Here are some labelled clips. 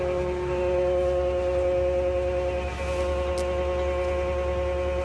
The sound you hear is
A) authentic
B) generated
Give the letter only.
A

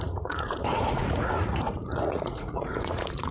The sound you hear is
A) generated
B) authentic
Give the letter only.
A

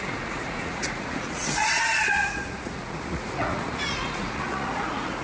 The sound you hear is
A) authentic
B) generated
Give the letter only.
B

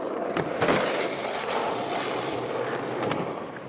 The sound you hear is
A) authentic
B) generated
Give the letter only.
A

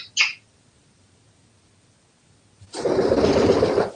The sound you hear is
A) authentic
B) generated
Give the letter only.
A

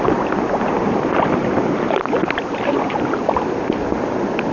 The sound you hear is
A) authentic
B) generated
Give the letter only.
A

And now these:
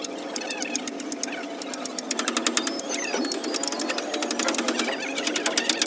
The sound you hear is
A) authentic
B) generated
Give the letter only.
A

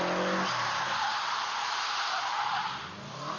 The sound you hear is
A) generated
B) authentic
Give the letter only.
B